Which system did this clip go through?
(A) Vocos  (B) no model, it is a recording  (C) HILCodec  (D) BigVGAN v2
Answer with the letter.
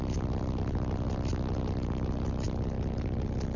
B